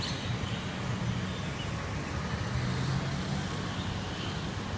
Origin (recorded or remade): recorded